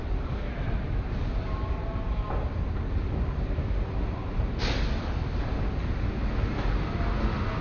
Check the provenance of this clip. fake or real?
real